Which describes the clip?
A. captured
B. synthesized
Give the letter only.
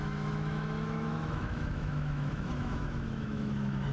B